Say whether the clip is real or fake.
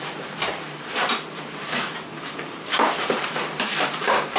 fake